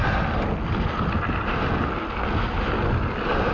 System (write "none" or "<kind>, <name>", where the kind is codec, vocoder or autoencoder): none